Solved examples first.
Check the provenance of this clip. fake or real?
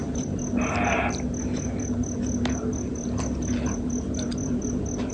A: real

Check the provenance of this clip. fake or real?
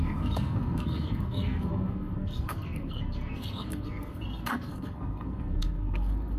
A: fake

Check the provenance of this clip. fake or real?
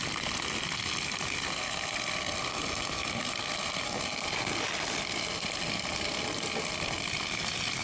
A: real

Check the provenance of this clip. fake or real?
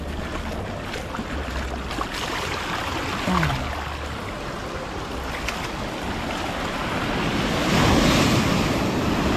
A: real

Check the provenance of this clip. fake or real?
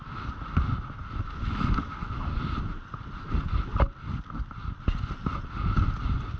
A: real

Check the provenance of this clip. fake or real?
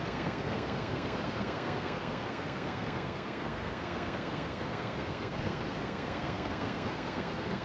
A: fake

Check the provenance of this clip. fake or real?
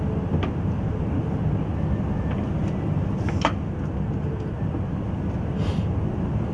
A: real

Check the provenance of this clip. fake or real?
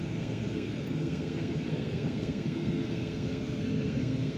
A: fake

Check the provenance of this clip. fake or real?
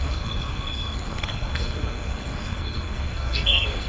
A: fake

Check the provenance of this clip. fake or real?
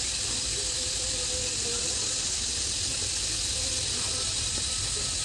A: real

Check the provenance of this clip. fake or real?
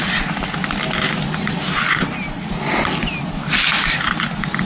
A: real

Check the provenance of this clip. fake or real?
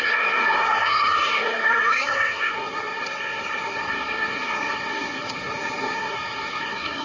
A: fake